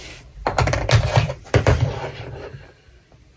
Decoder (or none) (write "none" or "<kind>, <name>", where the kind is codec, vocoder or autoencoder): vocoder, BigVGAN v2